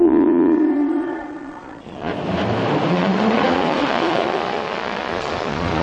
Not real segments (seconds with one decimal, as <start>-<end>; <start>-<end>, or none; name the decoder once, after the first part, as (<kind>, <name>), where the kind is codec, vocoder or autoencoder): 0.0-2.1 (vocoder, Vocos); 2.9-5.8